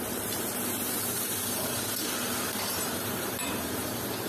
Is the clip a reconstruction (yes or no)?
yes